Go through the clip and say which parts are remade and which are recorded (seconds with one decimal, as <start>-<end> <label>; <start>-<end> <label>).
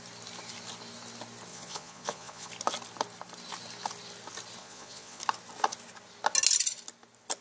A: 0.0-1.5 recorded; 1.5-2.5 remade; 2.5-4.6 recorded; 4.6-5.2 remade; 5.2-7.4 recorded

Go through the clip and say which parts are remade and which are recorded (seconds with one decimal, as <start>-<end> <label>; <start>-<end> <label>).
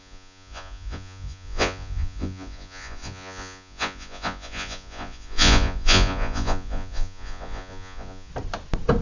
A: 0.0-8.3 remade; 8.3-9.0 recorded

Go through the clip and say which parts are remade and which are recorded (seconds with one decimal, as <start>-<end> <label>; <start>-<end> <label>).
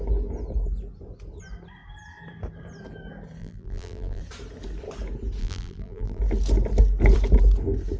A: 0.0-3.4 recorded; 3.4-4.2 remade; 4.2-5.4 recorded; 5.4-6.2 remade; 6.2-8.0 recorded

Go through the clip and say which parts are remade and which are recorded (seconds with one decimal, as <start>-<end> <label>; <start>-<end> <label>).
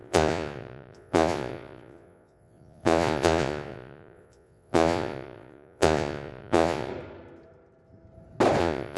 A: 0.0-6.9 remade; 6.9-8.6 recorded; 8.6-9.0 remade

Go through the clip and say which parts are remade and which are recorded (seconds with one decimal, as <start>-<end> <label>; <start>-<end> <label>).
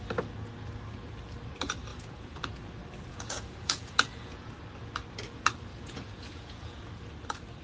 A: 0.0-1.9 recorded; 1.9-2.4 remade; 2.4-3.1 recorded; 3.1-4.5 remade; 4.5-5.7 recorded; 5.7-6.9 remade; 6.9-7.6 recorded